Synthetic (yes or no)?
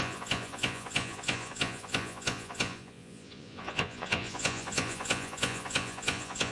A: yes